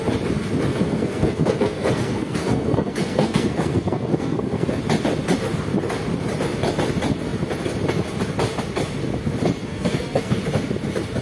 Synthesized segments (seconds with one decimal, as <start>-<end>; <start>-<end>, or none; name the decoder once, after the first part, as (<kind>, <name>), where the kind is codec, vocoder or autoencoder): 0.7-4.8 (codec, SNAC); 9.6-10.3